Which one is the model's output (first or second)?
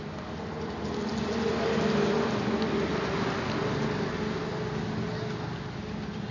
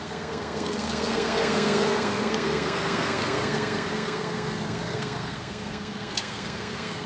second